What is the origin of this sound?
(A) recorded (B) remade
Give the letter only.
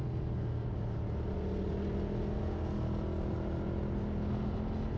A